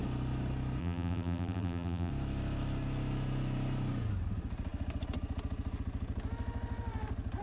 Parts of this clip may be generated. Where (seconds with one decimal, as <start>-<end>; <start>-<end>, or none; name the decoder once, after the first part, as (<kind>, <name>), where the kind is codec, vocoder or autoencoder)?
0.8-2.1 (vocoder, BigVGAN v2)